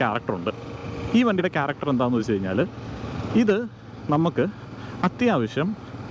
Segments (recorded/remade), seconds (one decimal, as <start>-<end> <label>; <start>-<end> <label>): 0.0-6.1 recorded